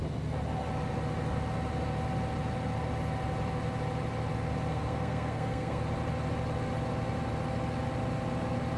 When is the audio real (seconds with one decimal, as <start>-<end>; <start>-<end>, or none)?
0.0-4.7; 5.8-8.8